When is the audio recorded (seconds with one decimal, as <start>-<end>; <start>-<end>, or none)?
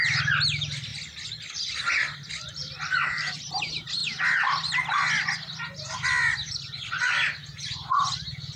0.0-2.6; 3.5-8.6